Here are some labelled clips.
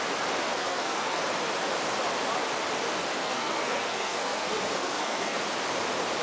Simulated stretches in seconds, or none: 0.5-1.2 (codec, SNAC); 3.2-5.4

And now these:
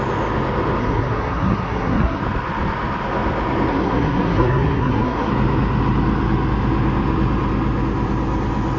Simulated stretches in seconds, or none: 0.8-2.2 (codec, SNAC); 3.7-5.3

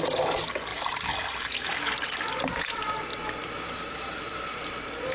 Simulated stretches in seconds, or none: none

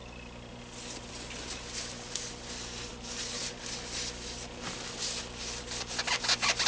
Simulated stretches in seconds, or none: none

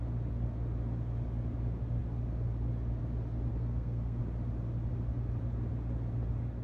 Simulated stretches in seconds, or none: 3.5-4.2 (codec, SNAC)

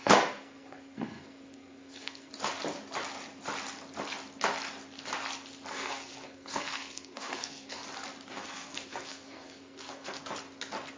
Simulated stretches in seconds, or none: 0.0-2.3 (codec, SNAC); 5.7-7.8; 8.3-10.2